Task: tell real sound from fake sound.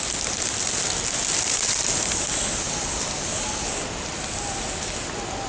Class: real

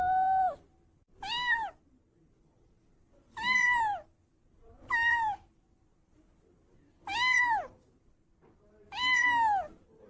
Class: real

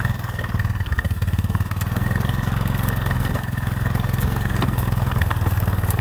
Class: fake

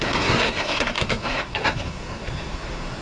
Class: fake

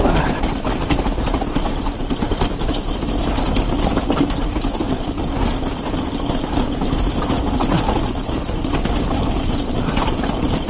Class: real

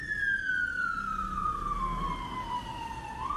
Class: real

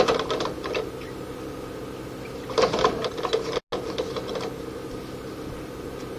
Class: real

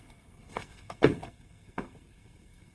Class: fake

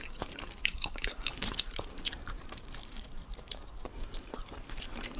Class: fake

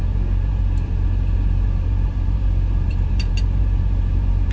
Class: fake